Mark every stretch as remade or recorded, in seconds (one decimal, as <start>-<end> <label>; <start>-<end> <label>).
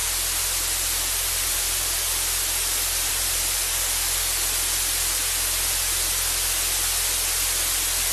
0.0-8.1 recorded